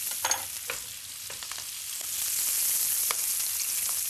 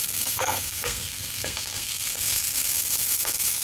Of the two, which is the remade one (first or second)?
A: second